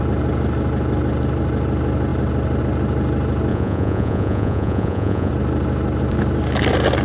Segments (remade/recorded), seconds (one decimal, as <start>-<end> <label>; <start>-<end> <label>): 0.0-3.5 recorded; 3.5-5.3 remade; 5.3-7.0 recorded